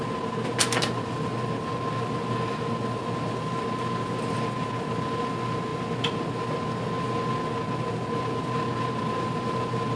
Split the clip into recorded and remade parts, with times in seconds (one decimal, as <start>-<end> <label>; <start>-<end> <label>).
0.0-10.0 recorded